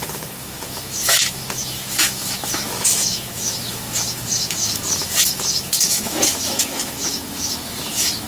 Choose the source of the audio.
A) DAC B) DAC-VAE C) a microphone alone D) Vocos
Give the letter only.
B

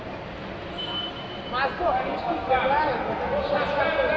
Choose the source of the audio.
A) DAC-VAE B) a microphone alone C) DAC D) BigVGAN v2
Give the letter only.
B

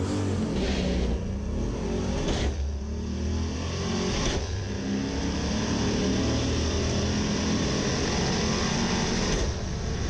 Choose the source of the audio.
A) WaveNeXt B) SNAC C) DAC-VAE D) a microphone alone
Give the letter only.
D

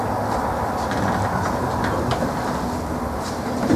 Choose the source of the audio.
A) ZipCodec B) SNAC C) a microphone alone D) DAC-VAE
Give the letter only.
C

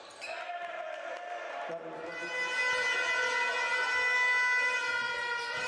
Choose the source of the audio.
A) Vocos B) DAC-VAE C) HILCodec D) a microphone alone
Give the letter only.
D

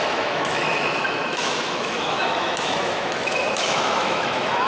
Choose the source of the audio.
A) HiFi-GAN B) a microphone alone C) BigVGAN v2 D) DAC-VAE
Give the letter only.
D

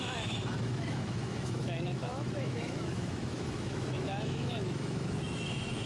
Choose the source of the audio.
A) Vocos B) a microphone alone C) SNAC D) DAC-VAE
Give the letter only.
D